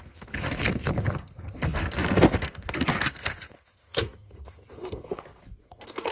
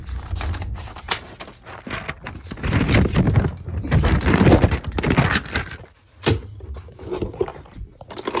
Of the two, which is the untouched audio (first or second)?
second